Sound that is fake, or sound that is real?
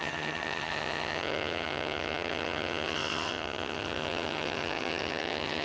fake